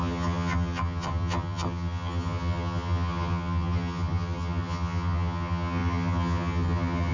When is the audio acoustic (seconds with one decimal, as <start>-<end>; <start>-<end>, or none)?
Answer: none